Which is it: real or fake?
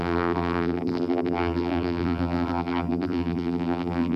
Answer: fake